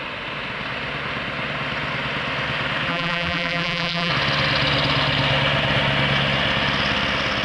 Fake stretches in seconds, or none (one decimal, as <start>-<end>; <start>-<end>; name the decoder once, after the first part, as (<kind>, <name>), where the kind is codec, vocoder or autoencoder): 2.9-4.1 (vocoder, BigVGAN v2)